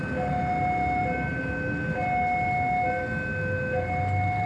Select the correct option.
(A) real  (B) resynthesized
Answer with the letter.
A